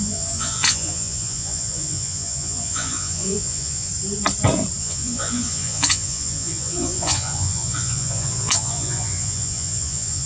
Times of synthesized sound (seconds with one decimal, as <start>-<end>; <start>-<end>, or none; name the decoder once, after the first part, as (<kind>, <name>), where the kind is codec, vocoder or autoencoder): 0.0-3.9 (vocoder, Vocos); 4.8-10.3

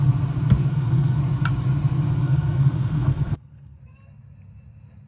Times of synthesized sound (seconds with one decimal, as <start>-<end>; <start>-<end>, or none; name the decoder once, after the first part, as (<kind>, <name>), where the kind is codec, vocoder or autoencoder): 0.6-1.2 (codec, SNAC); 2.2-3.8

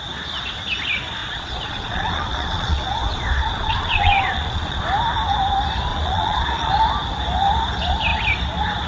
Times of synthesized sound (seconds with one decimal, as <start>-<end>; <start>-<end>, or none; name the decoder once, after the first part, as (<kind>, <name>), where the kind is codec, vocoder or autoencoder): 1.2-4.8 (vocoder, Vocos); 5.9-6.7

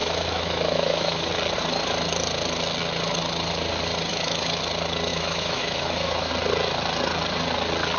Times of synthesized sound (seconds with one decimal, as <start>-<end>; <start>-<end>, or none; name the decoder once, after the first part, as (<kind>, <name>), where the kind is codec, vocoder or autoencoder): 0.0-1.3 (autoencoder, DAC-VAE); 4.1-4.6; 5.1-6.3